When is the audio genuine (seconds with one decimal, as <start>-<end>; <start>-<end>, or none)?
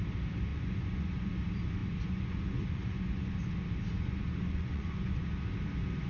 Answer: 0.0-0.5; 1.4-1.8; 3.5-3.9; 5.2-6.1